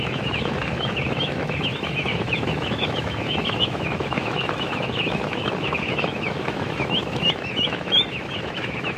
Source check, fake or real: fake